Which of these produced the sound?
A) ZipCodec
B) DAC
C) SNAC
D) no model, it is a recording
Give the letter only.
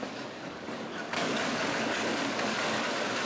B